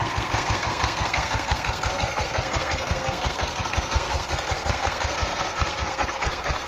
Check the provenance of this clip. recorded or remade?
remade